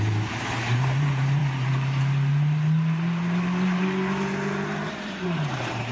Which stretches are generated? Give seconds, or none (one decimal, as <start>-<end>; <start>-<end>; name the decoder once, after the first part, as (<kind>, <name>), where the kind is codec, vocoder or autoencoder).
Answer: 0.0-1.4 (vocoder, BigVGAN v2); 4.9-5.9